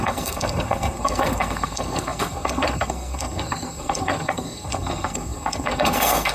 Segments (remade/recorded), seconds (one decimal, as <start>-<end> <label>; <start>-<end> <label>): 0.0-6.3 remade